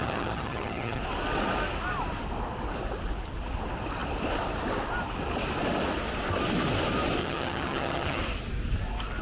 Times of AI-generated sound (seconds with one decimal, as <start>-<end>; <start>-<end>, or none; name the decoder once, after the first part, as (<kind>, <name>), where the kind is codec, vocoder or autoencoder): 0.0-1.0 (vocoder, HiFi-GAN); 7.2-8.2